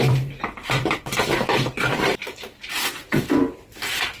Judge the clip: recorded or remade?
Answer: remade